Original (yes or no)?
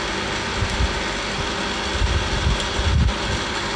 yes